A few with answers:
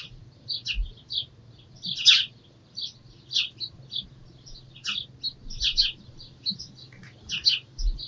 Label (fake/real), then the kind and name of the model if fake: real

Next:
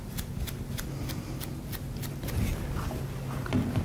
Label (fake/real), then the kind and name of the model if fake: real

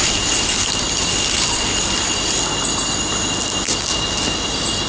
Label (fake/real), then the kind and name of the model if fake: real